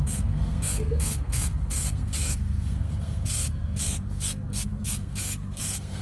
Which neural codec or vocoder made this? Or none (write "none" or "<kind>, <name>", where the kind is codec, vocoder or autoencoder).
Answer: codec, SNAC